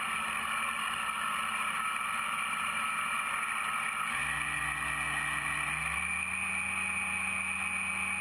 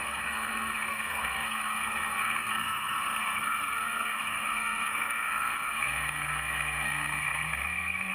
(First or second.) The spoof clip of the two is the second